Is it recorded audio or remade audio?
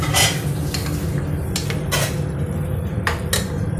recorded